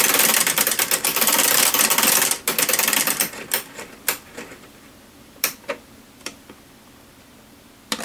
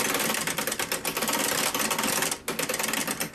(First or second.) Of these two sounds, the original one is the second